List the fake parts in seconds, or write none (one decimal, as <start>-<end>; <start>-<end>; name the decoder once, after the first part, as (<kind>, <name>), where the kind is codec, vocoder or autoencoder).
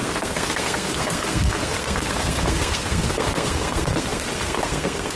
0.0-5.2 (codec, SNAC)